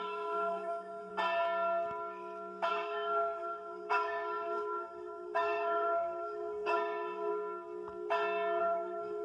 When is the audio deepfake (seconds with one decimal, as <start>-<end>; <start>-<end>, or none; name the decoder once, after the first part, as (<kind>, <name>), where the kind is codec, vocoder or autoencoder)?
0.0-1.1 (codec, SNAC); 2.7-7.3; 8.6-9.2